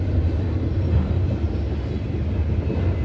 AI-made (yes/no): no